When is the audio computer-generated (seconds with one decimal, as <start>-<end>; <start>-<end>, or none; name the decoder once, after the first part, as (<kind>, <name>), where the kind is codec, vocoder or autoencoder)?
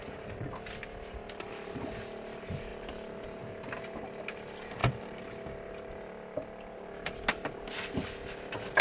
none